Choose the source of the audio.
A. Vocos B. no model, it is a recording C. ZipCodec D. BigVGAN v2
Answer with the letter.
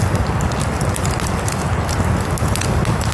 B